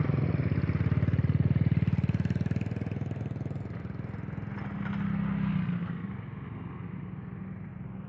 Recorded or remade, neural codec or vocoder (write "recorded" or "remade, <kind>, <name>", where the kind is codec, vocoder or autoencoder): recorded